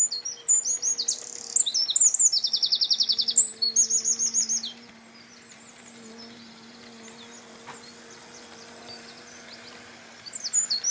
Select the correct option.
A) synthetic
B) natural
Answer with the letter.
B